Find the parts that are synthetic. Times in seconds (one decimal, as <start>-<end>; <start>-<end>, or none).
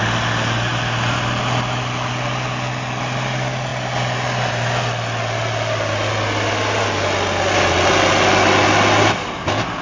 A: none